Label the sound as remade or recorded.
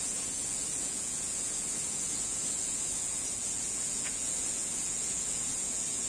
remade